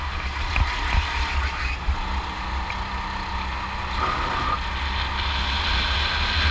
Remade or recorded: recorded